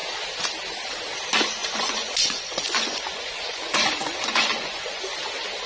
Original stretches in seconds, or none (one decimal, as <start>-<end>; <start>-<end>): 0.0-1.6; 5.0-5.7